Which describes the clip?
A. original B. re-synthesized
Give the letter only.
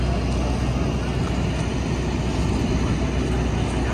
A